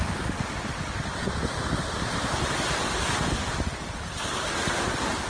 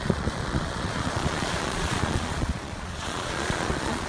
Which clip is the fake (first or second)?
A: second